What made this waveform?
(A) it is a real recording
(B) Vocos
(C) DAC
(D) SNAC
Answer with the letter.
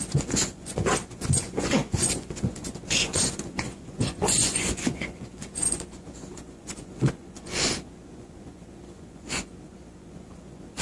B